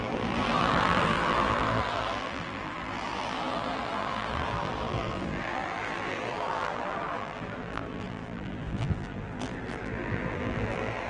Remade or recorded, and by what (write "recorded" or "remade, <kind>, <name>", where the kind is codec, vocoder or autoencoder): remade, vocoder, BigVGAN v2